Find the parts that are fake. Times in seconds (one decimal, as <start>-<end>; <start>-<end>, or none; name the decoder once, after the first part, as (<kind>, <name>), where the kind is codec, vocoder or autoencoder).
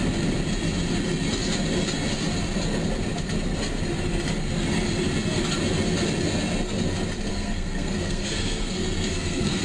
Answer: 7.3-9.6 (codec, SNAC)